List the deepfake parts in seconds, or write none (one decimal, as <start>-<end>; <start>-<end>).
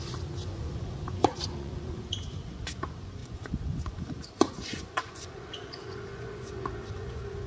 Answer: 0.0-7.5